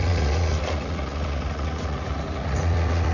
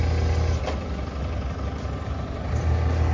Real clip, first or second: second